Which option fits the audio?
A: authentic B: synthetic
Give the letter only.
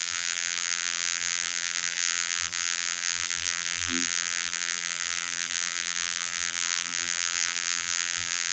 B